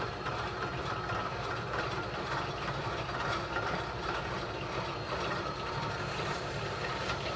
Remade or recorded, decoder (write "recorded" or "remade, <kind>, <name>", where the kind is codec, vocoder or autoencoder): remade, vocoder, BigVGAN v2